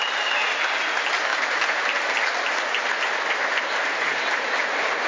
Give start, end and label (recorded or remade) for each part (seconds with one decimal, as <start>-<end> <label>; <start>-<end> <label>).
0.0-5.1 recorded